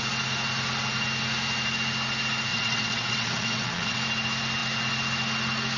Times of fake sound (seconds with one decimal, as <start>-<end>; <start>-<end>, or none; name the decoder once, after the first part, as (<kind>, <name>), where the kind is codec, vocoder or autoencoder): 2.5-4.0 (vocoder, WaveNeXt)